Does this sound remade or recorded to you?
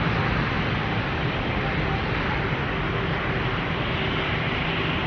recorded